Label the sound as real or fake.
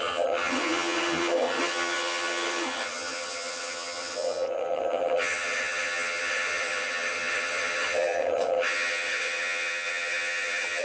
fake